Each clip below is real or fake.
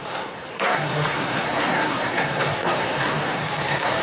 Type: fake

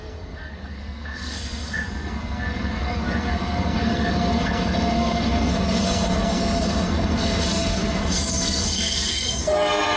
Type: fake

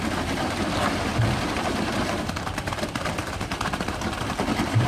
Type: fake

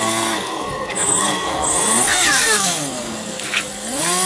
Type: fake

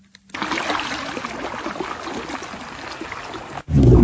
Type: real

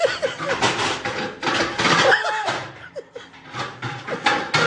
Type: real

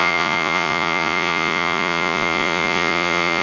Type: fake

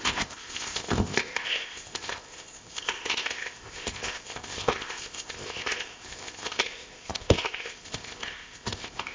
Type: fake